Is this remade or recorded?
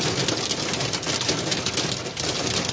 recorded